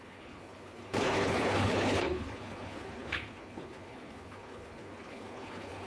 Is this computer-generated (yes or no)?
yes